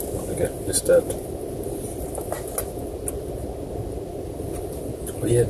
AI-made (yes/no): no